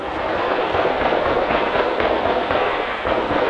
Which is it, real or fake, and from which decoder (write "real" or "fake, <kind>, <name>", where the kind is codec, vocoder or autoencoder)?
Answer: fake, codec, SNAC